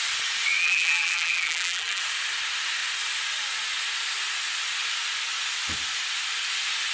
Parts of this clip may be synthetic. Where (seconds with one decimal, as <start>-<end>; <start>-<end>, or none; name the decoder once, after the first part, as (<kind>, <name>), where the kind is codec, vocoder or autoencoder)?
0.6-2.0 (vocoder, BigVGAN v2)